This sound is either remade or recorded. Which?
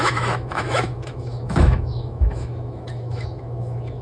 remade